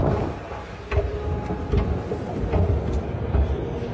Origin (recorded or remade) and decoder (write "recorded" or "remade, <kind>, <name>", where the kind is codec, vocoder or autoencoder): recorded